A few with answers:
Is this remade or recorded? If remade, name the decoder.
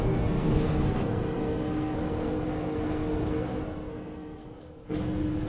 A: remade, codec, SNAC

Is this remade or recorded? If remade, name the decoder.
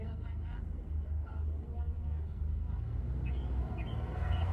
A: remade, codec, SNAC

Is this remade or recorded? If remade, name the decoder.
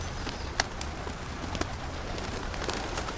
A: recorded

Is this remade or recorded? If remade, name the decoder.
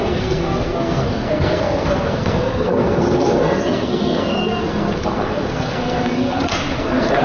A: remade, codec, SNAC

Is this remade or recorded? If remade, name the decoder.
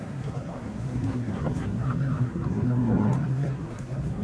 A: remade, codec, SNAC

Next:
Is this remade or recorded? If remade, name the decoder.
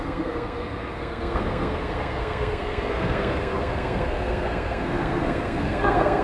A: remade, codec, SNAC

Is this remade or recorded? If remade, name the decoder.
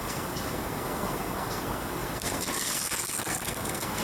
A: remade, codec, SNAC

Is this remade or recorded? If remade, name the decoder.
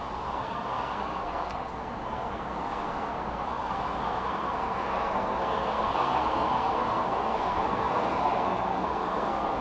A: remade, codec, SNAC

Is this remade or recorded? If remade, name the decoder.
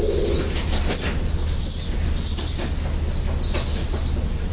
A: recorded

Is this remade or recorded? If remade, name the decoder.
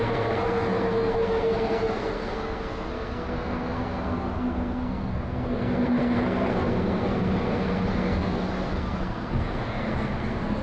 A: remade, codec, SNAC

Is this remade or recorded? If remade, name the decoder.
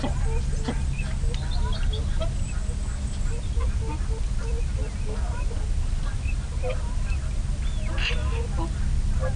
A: recorded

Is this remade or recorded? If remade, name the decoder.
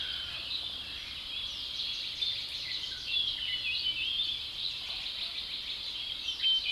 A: recorded